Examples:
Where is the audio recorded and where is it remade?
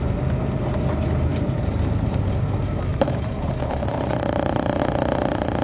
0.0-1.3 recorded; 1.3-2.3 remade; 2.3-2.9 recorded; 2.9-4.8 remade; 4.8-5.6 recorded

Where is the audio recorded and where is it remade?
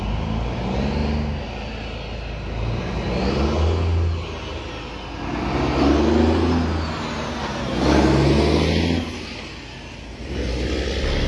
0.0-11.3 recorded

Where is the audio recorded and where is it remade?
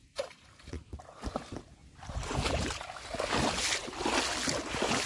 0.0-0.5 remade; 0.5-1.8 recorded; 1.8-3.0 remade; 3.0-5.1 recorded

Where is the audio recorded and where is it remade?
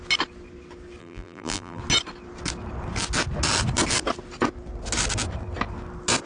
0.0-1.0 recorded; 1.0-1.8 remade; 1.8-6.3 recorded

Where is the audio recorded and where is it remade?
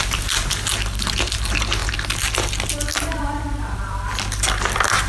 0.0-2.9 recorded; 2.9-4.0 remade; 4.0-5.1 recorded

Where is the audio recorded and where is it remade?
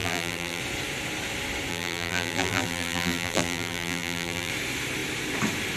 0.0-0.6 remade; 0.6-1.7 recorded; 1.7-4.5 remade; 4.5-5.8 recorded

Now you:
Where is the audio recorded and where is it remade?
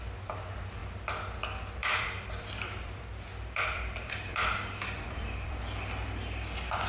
0.0-1.8 recorded; 1.8-5.6 remade; 5.6-6.9 recorded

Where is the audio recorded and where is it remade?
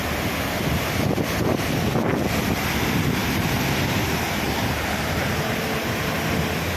0.0-3.2 recorded; 3.2-5.6 remade; 5.6-6.8 recorded